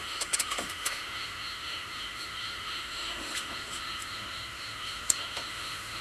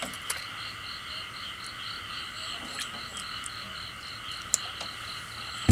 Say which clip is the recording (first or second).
second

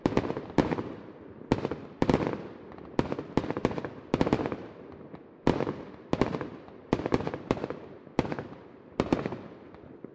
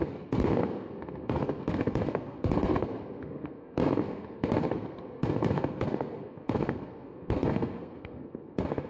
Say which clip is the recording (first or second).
first